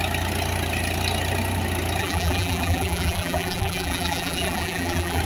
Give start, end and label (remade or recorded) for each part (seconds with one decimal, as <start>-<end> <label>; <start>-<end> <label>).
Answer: 0.0-2.0 recorded; 2.0-5.2 remade